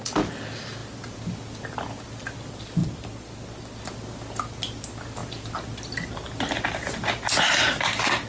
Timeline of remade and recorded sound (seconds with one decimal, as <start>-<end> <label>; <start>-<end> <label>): 0.0-8.3 recorded